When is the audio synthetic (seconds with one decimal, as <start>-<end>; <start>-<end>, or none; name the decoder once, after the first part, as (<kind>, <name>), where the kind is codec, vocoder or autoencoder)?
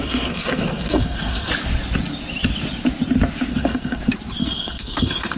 0.0-1.5 (codec, SNAC); 3.5-4.0; 4.4-5.4